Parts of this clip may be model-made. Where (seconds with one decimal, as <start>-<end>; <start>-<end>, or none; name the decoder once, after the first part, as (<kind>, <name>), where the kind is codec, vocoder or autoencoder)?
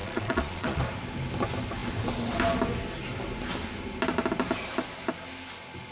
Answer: 0.0-0.8 (vocoder, Vocos)